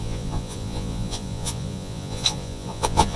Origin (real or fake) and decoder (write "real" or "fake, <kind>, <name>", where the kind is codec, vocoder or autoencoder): fake, vocoder, Vocos